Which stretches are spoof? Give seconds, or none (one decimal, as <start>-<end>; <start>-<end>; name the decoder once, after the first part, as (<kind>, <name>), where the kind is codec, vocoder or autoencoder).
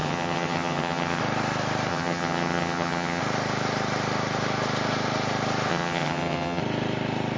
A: 0.0-1.2 (vocoder, HiFi-GAN); 1.9-3.2; 5.7-6.6